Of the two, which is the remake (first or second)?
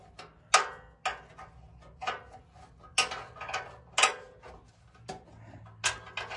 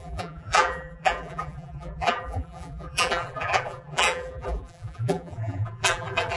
second